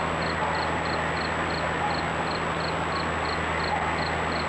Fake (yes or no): no